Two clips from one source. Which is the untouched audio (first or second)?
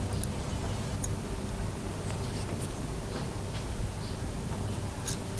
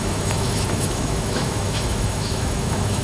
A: first